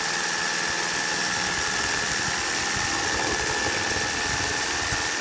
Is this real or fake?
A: real